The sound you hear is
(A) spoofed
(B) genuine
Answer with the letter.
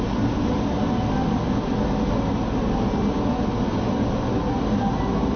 B